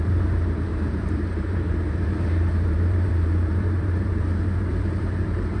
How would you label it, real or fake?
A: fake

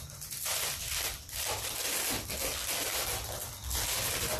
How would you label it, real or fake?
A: real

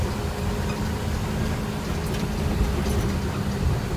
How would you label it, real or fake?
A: real